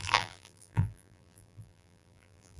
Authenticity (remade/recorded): remade